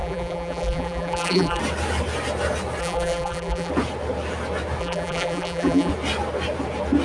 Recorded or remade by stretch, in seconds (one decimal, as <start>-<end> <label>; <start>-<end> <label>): 0.0-1.6 remade; 1.6-2.8 recorded; 2.8-3.7 remade; 3.7-4.8 recorded; 4.8-5.9 remade; 5.9-7.0 recorded